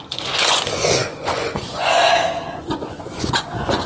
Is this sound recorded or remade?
remade